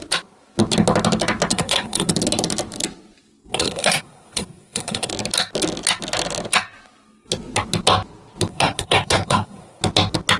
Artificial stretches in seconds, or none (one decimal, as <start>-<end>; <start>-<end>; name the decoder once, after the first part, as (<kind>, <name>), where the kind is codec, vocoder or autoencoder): 1.5-2.1 (codec, SNAC); 3.5-5.1; 8.5-9.8